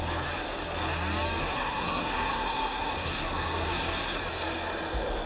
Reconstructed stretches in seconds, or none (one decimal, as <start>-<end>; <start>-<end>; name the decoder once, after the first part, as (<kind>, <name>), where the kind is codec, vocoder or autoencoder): 1.4-4.2 (codec, SNAC)